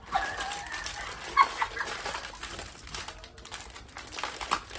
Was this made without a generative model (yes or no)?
yes